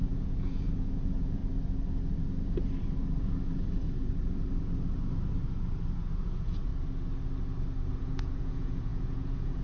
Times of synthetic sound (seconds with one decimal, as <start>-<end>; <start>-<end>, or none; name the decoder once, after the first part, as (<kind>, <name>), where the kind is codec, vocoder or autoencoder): 0.0-1.4 (vocoder, Vocos); 6.0-6.7; 7.9-9.6